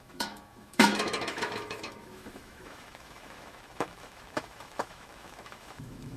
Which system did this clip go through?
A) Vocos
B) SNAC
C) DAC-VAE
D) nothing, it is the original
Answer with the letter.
C